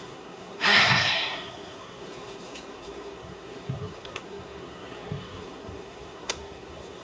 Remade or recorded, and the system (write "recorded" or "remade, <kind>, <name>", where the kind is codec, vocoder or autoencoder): remade, codec, SNAC